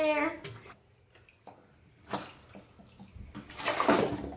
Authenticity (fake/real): real